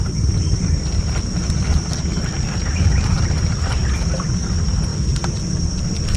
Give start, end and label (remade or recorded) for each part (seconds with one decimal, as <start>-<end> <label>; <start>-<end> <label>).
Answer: 0.0-2.1 recorded; 2.1-3.6 remade; 3.6-6.2 recorded